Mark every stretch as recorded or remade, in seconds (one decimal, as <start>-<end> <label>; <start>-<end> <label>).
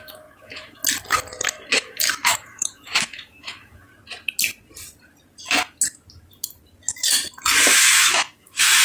0.0-0.8 remade; 0.8-1.7 recorded; 1.7-3.9 remade; 3.9-7.7 recorded; 7.7-8.8 remade